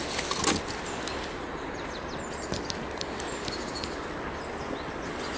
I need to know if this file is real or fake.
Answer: real